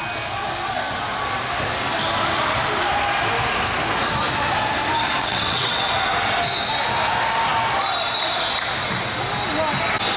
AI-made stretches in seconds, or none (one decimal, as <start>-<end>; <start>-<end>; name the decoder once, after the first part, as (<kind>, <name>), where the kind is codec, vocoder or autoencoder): 5.2-5.9 (vocoder, WaveNeXt)